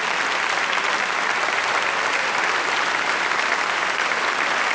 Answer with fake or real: real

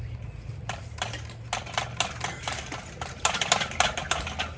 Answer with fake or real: real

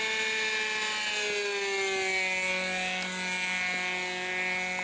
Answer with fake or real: real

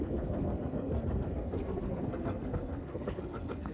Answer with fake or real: fake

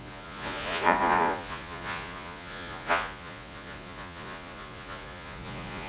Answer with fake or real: fake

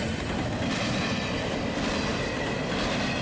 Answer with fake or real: real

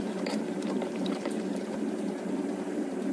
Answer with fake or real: fake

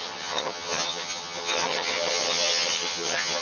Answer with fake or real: fake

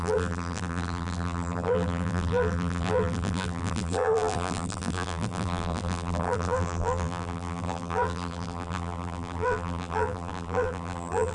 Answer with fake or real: fake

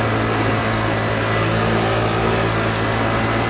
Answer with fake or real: real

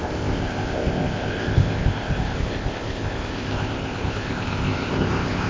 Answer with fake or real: fake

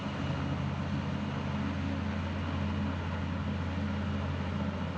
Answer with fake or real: real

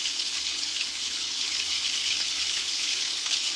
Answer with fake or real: fake